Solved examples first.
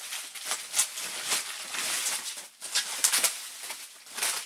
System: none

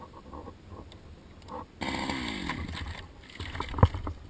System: none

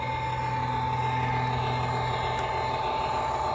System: none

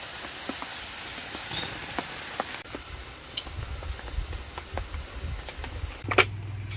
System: none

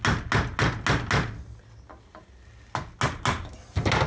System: none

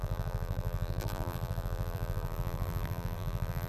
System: vocoder, BigVGAN v2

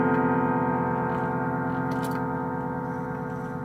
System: none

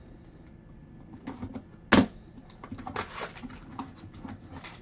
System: none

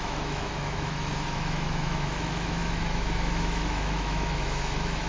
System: autoencoder, DAC-VAE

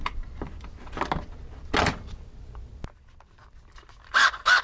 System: none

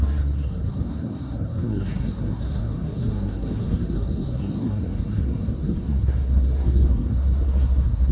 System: codec, SNAC